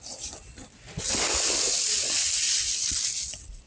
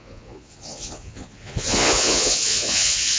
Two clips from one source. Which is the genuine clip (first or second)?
first